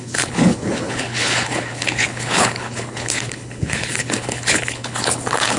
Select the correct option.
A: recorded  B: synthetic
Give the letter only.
B